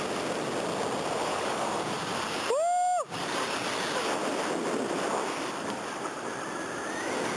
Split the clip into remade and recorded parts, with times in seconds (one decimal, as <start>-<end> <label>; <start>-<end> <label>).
0.0-1.3 recorded; 1.3-1.9 remade; 1.9-7.4 recorded